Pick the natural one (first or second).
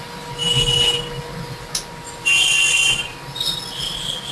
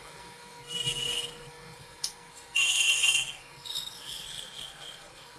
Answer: first